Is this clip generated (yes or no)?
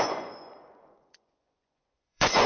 yes